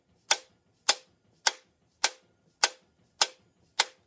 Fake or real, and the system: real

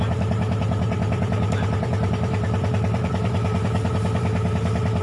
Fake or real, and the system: fake, vocoder, BigVGAN v2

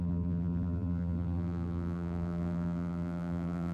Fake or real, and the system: fake, vocoder, BigVGAN v2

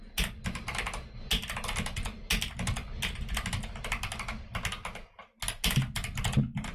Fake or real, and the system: real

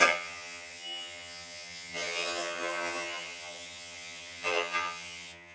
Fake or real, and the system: fake, vocoder, HiFi-GAN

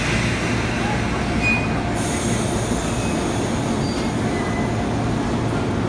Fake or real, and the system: real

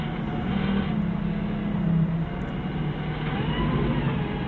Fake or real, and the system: real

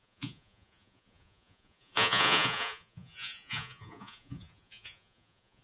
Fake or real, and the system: fake, vocoder, Vocos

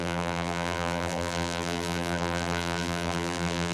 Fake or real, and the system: fake, vocoder, BigVGAN v2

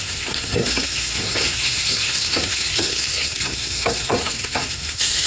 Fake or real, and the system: fake, codec, SNAC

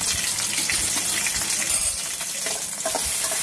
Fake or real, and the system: real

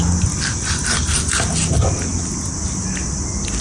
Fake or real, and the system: real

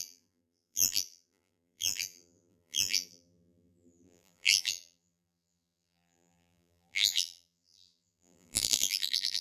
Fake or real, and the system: fake, vocoder, BigVGAN v2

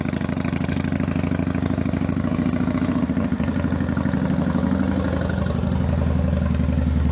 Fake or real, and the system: real